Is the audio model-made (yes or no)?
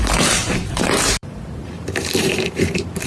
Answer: yes